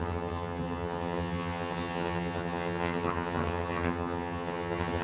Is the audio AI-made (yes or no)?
yes